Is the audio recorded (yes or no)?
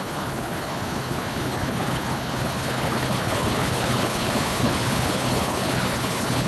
no